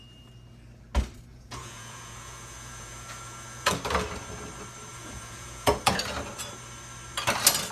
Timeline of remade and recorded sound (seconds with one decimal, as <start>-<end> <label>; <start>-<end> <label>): 0.0-1.3 recorded; 1.3-3.7 remade; 3.7-4.9 recorded; 4.9-5.9 remade; 5.9-7.7 recorded